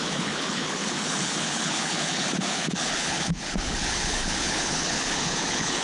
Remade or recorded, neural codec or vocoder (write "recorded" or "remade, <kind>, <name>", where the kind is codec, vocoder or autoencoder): remade, codec, HILCodec